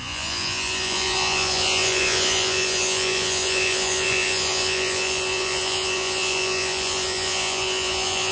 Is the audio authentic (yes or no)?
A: no